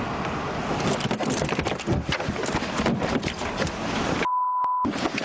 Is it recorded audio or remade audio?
recorded